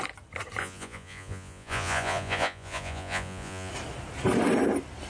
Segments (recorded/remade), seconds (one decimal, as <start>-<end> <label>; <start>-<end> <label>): 0.0-0.6 recorded; 0.6-3.7 remade; 3.7-5.1 recorded